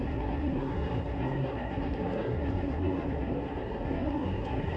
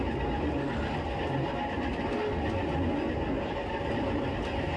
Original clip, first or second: second